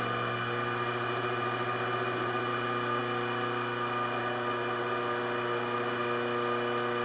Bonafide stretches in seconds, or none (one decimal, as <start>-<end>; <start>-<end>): 0.0-7.0